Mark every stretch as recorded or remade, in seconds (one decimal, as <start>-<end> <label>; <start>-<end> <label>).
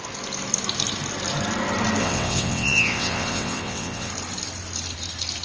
0.0-2.0 recorded; 2.0-4.1 remade; 4.1-5.4 recorded